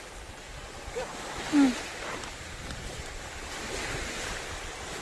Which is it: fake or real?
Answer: real